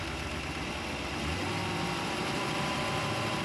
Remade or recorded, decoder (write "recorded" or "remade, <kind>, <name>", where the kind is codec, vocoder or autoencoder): remade, vocoder, BigVGAN v2